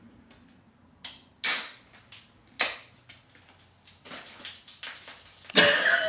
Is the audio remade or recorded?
recorded